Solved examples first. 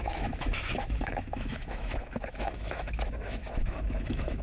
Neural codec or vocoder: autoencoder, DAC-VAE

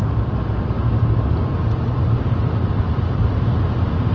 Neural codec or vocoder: none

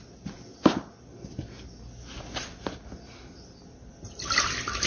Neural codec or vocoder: none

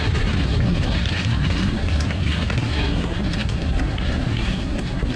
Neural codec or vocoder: codec, SNAC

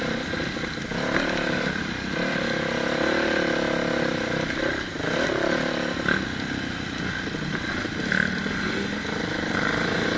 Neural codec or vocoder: none